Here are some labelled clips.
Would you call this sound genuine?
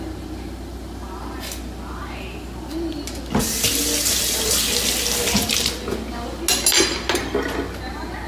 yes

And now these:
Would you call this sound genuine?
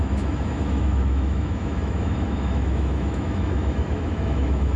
no